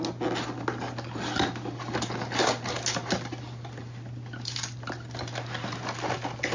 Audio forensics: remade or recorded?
recorded